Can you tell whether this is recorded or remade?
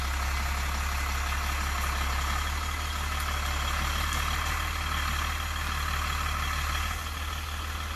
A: recorded